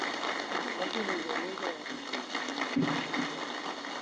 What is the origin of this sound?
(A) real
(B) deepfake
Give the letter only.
A